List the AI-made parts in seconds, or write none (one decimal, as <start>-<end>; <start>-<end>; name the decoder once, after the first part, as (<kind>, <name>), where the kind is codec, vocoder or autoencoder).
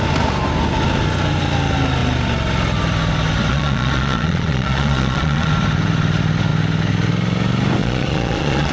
3.5-5.5 (vocoder, Vocos); 7.8-8.7